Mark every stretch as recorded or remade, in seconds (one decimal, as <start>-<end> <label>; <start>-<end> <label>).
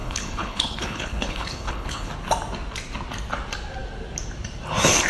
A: 0.0-2.1 remade; 2.1-5.1 recorded